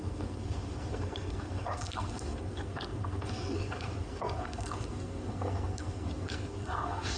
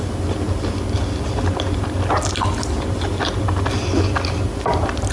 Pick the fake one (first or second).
first